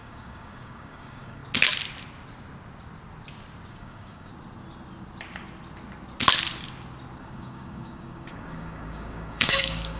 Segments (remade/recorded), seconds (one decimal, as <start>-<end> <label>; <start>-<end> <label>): 0.0-1.4 remade; 1.4-3.7 recorded; 3.7-4.3 remade; 4.3-7.2 recorded; 7.2-10.0 remade